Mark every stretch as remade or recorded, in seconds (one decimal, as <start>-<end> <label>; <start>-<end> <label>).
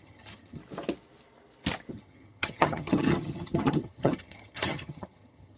0.0-0.6 remade; 0.6-1.9 recorded; 1.9-5.6 remade